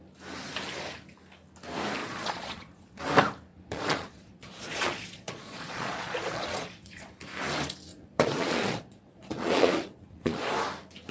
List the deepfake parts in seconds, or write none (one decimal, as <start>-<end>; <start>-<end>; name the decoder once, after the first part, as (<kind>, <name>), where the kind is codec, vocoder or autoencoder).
2.0-3.0 (vocoder, Vocos); 3.5-7.1; 7.9-10.5